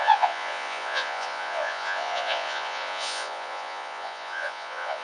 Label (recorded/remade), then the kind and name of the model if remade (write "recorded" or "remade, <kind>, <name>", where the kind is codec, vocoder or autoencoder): remade, vocoder, Vocos